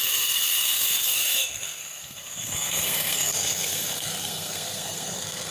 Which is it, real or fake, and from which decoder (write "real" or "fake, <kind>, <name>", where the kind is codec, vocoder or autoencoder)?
fake, codec, SNAC